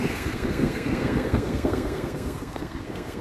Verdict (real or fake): fake